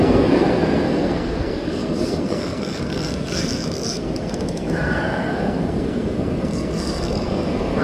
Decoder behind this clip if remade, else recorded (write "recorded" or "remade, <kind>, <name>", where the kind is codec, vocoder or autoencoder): remade, codec, SNAC